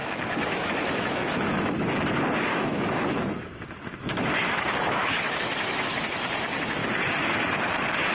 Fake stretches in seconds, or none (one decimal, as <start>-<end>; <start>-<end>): 0.0-1.7; 2.5-6.0